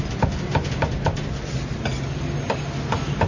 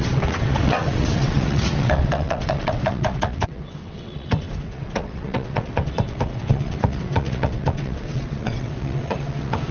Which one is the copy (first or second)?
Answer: second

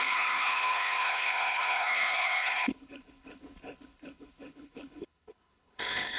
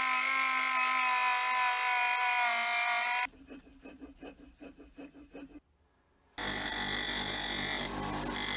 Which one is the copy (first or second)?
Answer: first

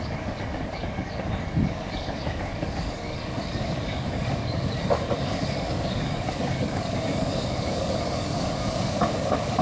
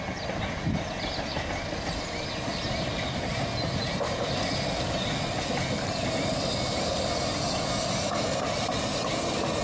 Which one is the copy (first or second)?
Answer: first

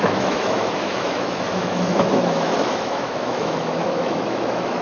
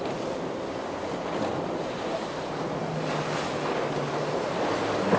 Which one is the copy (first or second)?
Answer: first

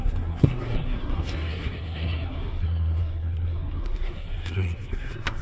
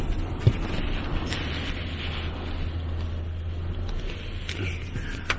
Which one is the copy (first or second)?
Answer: first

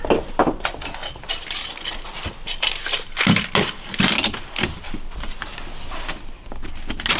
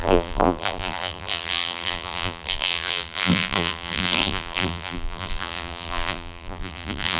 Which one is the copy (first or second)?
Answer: second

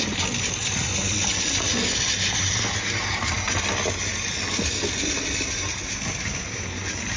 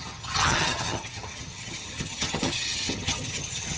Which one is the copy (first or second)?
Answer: second